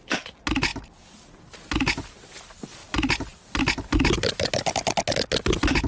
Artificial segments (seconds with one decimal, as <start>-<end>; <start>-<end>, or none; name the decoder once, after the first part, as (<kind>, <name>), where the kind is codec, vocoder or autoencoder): none